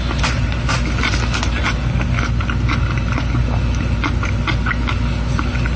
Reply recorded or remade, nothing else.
recorded